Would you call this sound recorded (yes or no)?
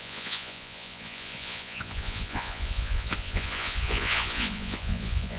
no